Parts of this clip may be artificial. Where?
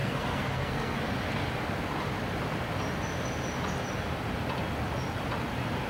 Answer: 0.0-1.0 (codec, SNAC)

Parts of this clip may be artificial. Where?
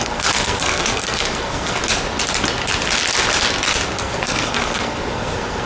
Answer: 0.0-1.8 (codec, SNAC); 3.9-5.7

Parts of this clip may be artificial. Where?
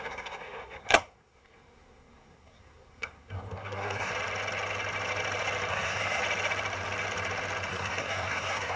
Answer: 0.0-4.1 (codec, SNAC); 5.7-6.2; 7.7-8.8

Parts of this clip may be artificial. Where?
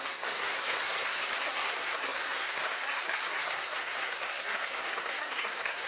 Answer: 0.0-5.9 (codec, SNAC)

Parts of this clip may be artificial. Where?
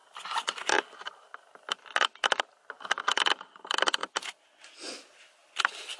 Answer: none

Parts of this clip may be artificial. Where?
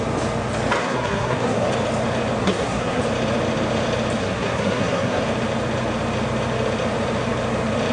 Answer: 0.8-1.7 (codec, SNAC); 2.4-3.0; 4.2-5.2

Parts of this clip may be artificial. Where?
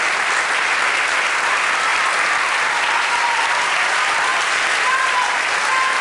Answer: none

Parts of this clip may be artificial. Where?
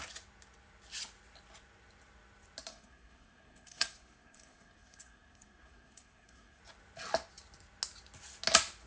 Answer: 2.7-6.6 (codec, SNAC)